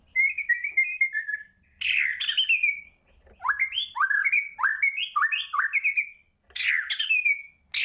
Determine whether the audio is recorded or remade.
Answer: recorded